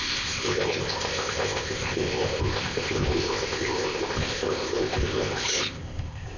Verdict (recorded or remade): remade